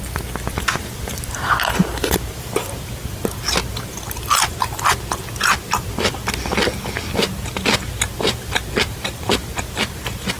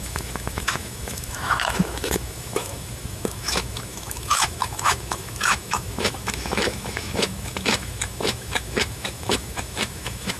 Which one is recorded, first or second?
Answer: first